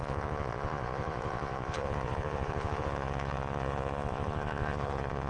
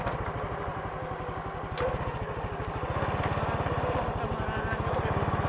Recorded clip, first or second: second